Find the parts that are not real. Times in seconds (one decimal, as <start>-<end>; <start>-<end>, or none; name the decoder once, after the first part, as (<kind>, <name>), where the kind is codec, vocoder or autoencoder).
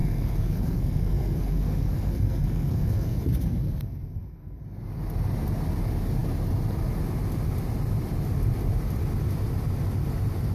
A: 0.0-4.6 (codec, SNAC)